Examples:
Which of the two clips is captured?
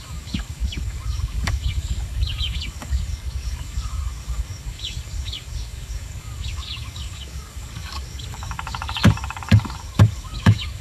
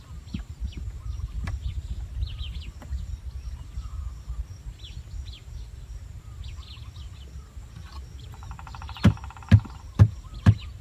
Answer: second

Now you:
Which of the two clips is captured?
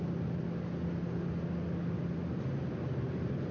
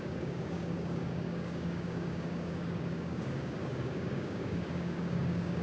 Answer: first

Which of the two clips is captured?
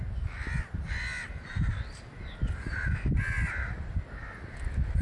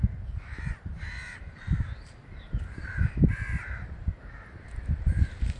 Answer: first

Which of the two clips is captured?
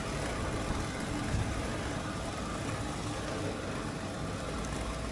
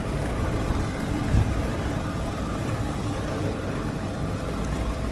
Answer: first